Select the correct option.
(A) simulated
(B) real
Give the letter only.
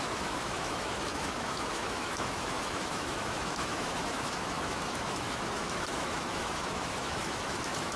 A